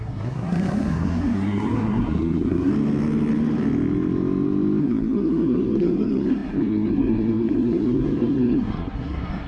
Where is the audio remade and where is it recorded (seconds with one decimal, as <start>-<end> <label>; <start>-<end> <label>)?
0.0-2.7 remade; 2.7-4.8 recorded; 4.8-9.5 remade